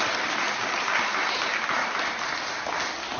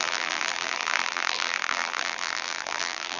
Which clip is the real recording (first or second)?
first